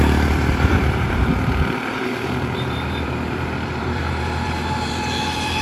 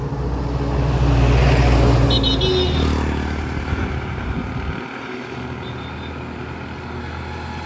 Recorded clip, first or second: second